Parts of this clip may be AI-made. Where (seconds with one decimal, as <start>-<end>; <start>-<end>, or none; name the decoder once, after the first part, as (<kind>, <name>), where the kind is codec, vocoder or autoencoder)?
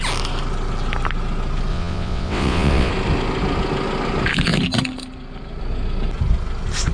1.7-2.9 (vocoder, WaveNeXt)